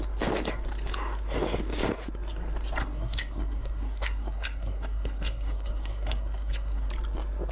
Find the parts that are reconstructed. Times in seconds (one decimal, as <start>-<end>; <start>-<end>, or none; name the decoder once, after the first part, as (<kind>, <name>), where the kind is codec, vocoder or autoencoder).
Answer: 2.8-6.9 (codec, SNAC)